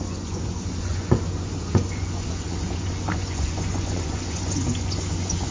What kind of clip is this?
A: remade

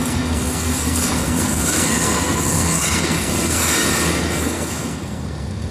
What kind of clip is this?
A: remade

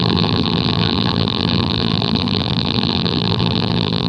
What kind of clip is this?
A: remade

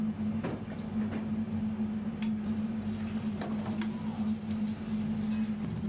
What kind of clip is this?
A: recorded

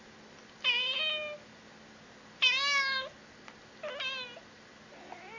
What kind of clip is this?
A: recorded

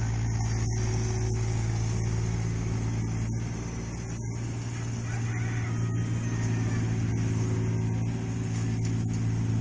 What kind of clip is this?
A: recorded